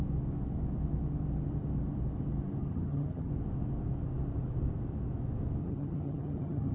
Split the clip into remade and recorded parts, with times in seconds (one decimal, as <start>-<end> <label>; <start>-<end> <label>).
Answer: 0.0-2.6 recorded; 2.6-3.3 remade; 3.3-5.6 recorded; 5.6-6.7 remade